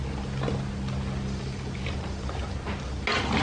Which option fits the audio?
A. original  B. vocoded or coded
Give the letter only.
A